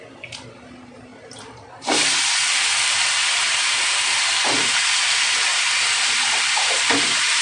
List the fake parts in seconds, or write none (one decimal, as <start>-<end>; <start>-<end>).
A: 0.0-1.1; 3.4-7.4